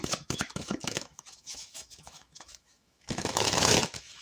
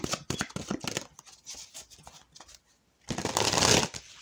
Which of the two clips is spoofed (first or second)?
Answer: first